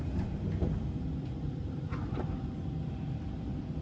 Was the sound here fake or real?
real